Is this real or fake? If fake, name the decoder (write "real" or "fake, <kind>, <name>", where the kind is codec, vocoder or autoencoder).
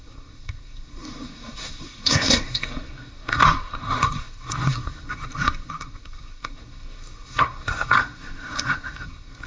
fake, codec, SNAC